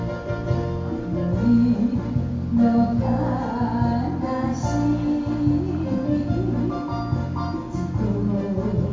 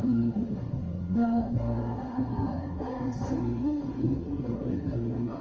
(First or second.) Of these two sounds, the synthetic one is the second